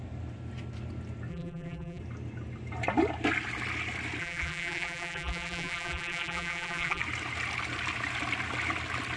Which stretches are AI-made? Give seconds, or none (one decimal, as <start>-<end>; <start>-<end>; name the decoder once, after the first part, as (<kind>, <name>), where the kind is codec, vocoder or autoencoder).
1.3-2.0 (vocoder, BigVGAN v2); 4.2-7.0